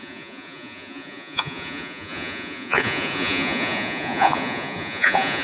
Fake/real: fake